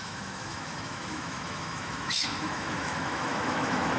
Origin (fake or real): fake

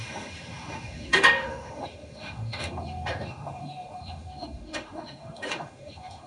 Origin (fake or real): fake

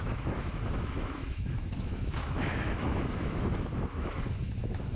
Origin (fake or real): fake